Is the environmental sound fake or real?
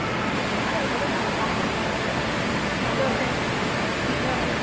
real